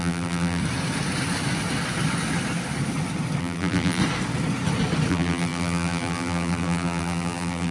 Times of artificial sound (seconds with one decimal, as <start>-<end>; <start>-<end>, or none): 0.0-0.6; 3.4-4.0; 5.1-7.7